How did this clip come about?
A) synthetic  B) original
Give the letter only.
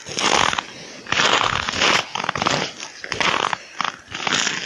B